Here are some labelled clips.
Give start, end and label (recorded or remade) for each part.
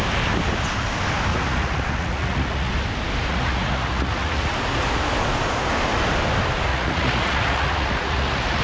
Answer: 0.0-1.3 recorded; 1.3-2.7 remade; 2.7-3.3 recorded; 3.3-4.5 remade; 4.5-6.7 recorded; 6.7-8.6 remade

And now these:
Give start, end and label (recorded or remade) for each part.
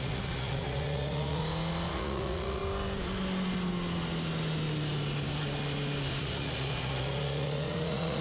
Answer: 0.0-1.4 remade; 1.4-1.9 recorded; 1.9-2.6 remade; 2.6-6.2 recorded; 6.2-8.2 remade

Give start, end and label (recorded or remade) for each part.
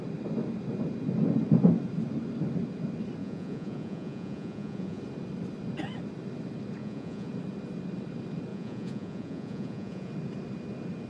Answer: 0.0-3.2 recorded; 3.2-5.0 remade; 5.0-6.8 recorded; 6.8-7.3 remade; 7.3-8.5 recorded; 8.5-10.1 remade; 10.1-11.1 recorded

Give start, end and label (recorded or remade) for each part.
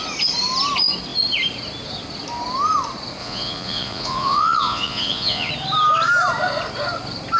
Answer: 0.0-3.2 recorded; 3.2-5.5 remade; 5.5-7.4 recorded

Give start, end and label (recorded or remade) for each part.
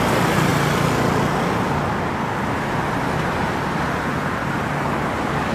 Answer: 0.0-5.5 recorded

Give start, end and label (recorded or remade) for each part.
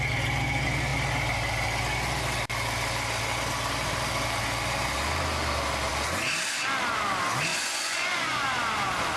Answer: 0.0-7.5 recorded; 7.5-8.4 remade; 8.4-9.2 recorded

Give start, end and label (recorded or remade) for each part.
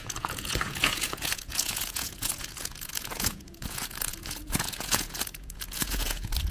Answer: 0.0-6.5 remade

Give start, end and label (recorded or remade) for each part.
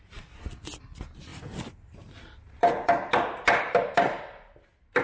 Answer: 0.0-5.0 recorded